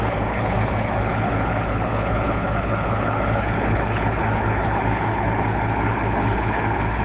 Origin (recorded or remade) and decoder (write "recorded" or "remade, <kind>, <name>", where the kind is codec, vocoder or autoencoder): remade, codec, HILCodec